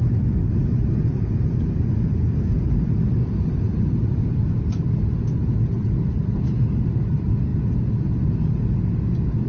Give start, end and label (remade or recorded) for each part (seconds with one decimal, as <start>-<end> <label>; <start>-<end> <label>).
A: 0.0-9.5 recorded